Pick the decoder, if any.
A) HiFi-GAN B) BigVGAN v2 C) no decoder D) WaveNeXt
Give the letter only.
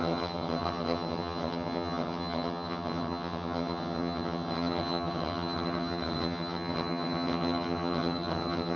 A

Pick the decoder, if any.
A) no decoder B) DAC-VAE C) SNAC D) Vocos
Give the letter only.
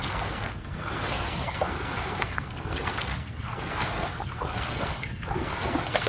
C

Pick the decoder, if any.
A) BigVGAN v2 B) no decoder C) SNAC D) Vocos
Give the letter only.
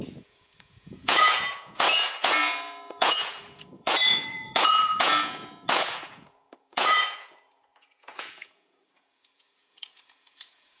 D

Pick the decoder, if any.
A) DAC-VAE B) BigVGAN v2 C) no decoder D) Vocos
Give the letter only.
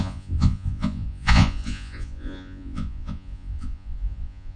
D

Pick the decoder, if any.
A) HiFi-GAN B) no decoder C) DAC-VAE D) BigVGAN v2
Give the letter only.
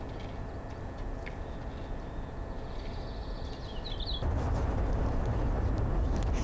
B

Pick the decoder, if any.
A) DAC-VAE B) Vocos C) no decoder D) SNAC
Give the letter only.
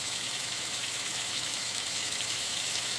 A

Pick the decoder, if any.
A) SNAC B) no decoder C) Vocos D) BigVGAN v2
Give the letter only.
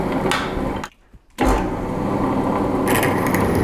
B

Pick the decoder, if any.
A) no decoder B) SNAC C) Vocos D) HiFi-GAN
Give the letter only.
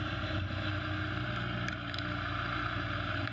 A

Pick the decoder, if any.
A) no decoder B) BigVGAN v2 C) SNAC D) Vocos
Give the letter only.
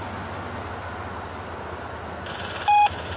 A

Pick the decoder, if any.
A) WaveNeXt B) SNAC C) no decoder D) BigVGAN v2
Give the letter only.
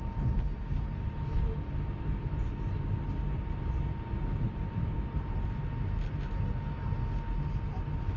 C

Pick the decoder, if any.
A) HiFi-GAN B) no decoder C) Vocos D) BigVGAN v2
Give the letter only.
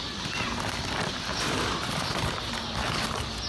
B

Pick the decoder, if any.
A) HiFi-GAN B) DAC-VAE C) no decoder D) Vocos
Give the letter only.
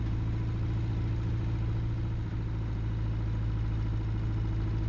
C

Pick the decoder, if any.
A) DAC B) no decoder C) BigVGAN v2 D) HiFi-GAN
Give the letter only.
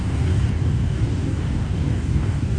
A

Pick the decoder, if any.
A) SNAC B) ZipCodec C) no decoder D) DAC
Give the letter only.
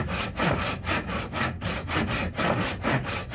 C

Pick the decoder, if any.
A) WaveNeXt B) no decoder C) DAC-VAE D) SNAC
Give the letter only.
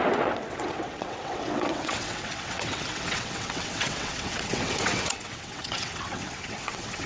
A